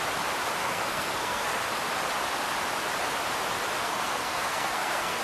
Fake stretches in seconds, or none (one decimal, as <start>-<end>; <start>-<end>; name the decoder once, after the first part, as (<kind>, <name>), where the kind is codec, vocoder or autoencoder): 0.6-1.7 (codec, SNAC); 3.8-5.2